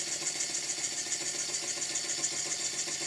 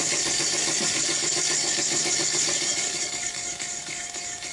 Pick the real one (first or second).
first